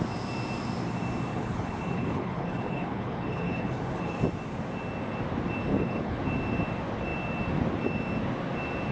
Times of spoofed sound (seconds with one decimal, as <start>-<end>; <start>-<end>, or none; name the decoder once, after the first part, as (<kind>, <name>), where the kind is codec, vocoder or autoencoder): 1.3-4.2 (codec, HILCodec); 5.7-6.2